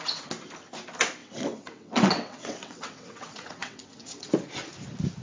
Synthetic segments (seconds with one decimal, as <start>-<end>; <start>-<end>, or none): 1.2-4.3